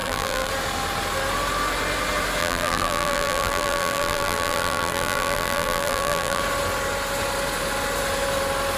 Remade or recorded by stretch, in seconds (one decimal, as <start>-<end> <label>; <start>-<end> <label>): 0.0-0.5 remade; 0.5-2.4 recorded; 2.4-6.4 remade; 6.4-8.8 recorded